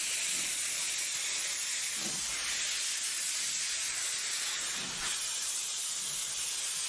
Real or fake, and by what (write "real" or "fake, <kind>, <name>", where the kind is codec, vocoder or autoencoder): real